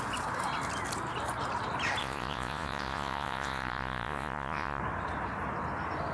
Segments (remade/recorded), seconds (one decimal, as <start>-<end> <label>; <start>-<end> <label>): 0.0-2.0 recorded; 2.0-4.8 remade; 4.8-6.1 recorded